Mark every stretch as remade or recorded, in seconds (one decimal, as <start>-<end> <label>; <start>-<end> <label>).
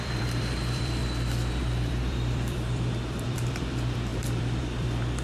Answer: 0.0-1.0 remade; 1.0-1.6 recorded; 1.6-5.2 remade